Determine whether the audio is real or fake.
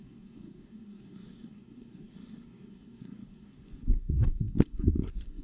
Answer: fake